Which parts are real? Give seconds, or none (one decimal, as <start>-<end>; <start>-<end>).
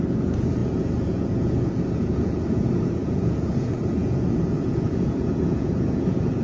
none